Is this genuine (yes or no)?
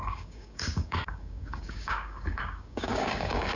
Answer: no